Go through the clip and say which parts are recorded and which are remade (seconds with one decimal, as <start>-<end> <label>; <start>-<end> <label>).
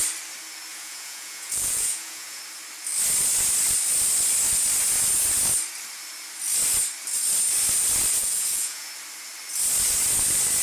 0.0-0.7 recorded; 0.7-2.4 remade; 2.4-8.2 recorded; 8.2-8.9 remade; 8.9-10.6 recorded